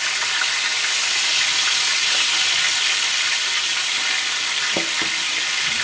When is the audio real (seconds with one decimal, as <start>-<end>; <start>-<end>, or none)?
0.0-5.8